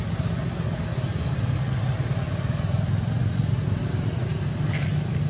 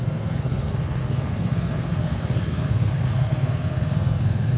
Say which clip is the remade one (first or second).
second